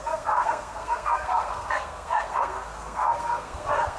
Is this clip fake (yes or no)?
yes